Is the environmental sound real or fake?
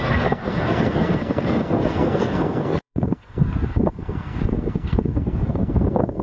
fake